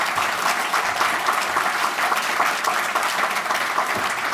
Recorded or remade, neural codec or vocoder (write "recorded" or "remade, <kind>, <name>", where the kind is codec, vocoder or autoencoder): remade, vocoder, BigVGAN v2